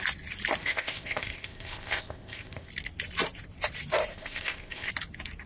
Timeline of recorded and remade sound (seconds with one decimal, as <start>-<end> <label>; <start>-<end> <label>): 0.0-0.6 recorded; 0.6-2.7 remade; 2.7-4.1 recorded; 4.1-4.9 remade; 4.9-5.5 recorded